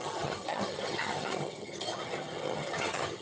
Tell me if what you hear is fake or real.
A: fake